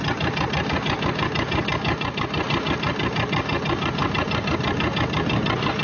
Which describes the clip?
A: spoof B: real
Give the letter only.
B